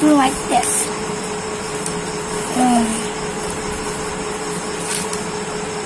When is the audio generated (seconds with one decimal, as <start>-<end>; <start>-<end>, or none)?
none